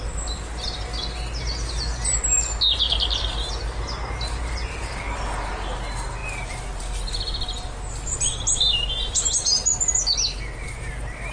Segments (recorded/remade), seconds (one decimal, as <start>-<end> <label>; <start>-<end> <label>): 0.0-11.3 recorded